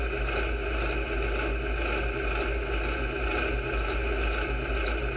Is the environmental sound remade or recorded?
recorded